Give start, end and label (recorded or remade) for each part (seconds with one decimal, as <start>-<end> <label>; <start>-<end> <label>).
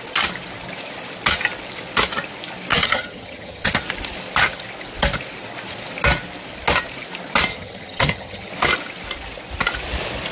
0.0-2.7 recorded; 2.7-3.7 remade; 3.7-7.5 recorded; 7.5-8.5 remade; 8.5-10.3 recorded